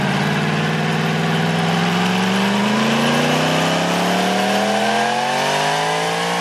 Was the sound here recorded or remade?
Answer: recorded